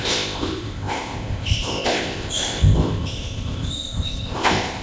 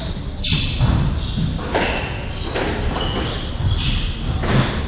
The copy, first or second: first